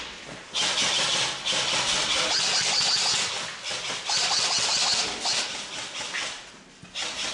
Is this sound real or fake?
real